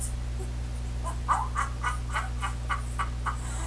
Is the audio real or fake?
real